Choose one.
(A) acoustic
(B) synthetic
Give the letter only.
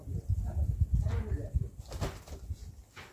A